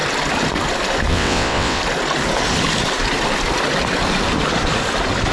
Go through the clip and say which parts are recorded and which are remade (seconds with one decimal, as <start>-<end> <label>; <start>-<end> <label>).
0.0-1.1 recorded; 1.1-1.8 remade; 1.8-5.3 recorded